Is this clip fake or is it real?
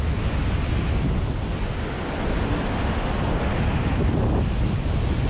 real